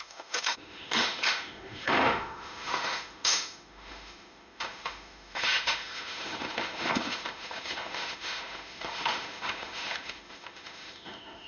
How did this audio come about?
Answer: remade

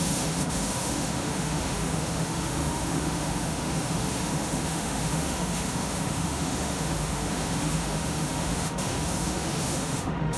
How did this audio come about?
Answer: remade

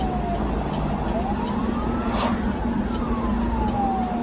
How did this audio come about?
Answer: recorded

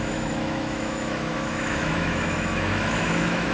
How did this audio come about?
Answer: remade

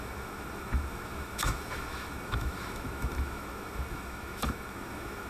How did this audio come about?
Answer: remade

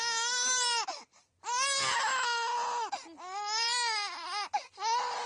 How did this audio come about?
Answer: recorded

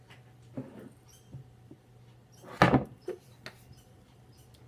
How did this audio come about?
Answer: recorded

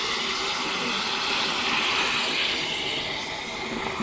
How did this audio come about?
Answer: recorded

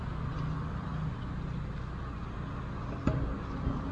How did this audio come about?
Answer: recorded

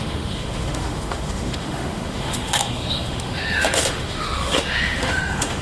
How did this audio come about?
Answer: remade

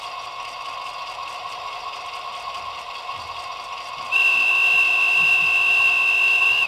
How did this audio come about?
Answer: recorded